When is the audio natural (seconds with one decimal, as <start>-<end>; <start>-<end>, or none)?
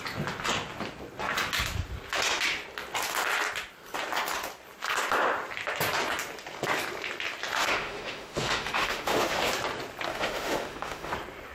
0.0-7.6; 9.5-10.1; 11.1-11.5